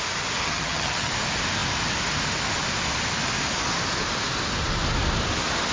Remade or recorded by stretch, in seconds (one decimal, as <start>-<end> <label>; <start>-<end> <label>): 0.0-0.4 recorded; 0.4-1.1 remade; 1.1-5.7 recorded